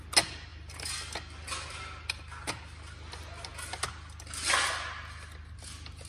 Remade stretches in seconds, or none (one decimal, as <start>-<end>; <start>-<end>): none